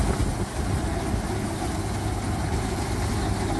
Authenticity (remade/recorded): recorded